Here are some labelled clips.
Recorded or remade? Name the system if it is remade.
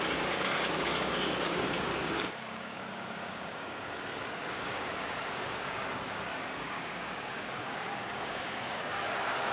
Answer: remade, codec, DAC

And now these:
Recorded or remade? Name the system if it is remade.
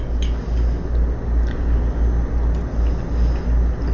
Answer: recorded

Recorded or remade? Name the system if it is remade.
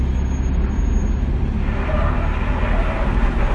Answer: recorded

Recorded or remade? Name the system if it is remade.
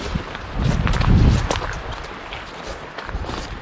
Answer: recorded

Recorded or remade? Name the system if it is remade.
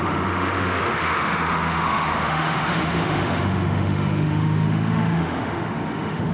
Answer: remade, autoencoder, DAC-VAE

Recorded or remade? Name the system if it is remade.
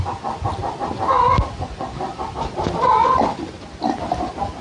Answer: recorded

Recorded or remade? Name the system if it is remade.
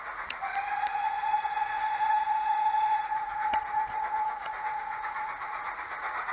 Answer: remade, vocoder, Vocos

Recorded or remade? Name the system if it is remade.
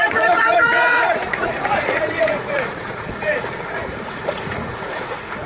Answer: remade, vocoder, Vocos